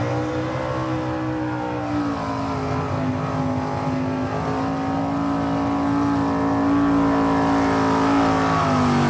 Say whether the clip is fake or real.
real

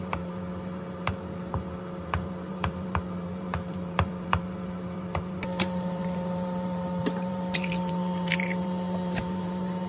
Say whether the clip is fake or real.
fake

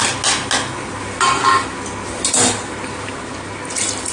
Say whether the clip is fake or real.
real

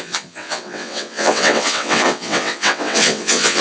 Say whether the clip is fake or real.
fake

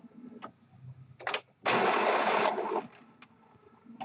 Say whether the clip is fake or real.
real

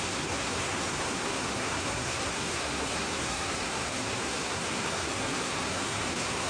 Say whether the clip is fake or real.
fake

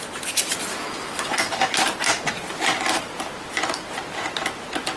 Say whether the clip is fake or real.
real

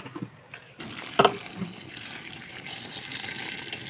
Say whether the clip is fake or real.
real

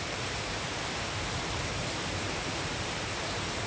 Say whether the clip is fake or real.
fake